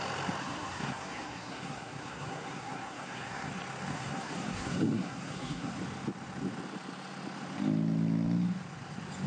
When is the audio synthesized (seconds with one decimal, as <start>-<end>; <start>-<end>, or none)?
0.4-3.5; 3.9-5.7